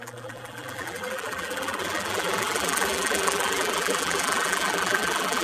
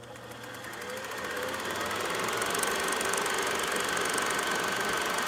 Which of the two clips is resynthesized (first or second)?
first